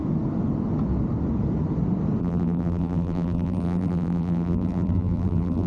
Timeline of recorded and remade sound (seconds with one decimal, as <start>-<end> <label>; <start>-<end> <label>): 0.0-2.2 recorded; 2.2-5.7 remade